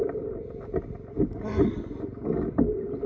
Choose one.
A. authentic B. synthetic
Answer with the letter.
A